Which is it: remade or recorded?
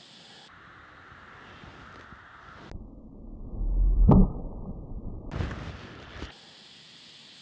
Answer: recorded